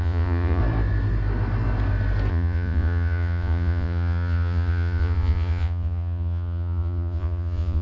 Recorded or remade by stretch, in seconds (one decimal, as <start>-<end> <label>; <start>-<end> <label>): 0.0-0.6 remade; 0.6-2.3 recorded; 2.3-7.8 remade

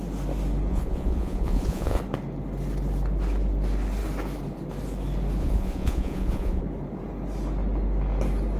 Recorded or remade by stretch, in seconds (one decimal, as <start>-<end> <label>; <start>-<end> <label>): 0.0-0.7 recorded; 0.7-2.0 remade; 2.0-5.4 recorded; 5.4-6.6 remade; 6.6-8.6 recorded

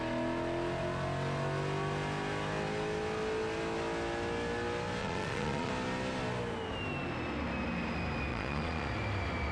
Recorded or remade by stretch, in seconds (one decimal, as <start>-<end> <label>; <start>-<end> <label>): 0.0-5.0 recorded; 5.0-5.7 remade; 5.7-8.3 recorded; 8.3-8.9 remade; 8.9-9.5 recorded

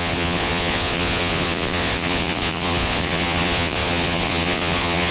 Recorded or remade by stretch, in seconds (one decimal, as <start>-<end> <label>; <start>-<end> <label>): 0.0-5.1 remade

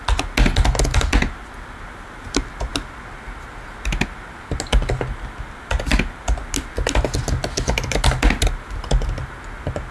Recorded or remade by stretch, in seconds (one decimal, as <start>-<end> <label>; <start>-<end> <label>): 0.0-9.9 recorded

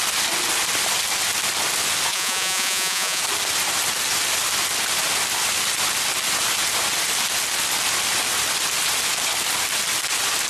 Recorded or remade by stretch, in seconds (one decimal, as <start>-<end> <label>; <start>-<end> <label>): 0.0-2.1 recorded; 2.1-3.2 remade; 3.2-10.5 recorded